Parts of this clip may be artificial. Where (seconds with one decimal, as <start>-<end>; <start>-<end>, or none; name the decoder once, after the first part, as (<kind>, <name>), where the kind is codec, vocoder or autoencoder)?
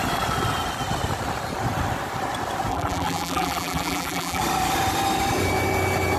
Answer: 2.7-4.4 (vocoder, BigVGAN v2)